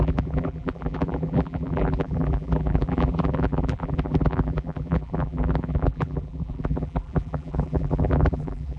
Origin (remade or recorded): remade